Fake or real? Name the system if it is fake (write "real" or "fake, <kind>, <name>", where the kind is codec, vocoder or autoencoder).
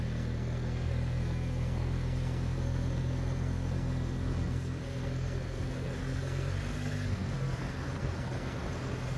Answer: fake, codec, SNAC